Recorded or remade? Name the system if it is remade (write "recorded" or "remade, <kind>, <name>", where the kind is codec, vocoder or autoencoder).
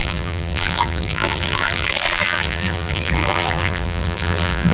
remade, vocoder, BigVGAN v2